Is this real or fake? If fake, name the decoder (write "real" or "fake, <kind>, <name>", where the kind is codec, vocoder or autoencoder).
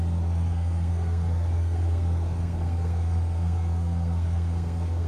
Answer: fake, codec, SNAC